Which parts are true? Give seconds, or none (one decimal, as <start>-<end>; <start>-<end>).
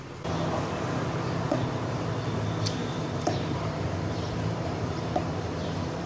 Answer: 0.0-2.8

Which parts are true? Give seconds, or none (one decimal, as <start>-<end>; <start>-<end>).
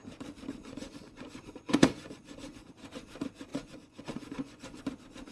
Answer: 0.0-0.6; 2.7-3.5; 4.8-5.3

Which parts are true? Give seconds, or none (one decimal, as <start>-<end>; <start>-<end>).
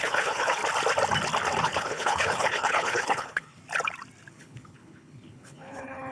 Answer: 0.6-1.6; 3.6-4.3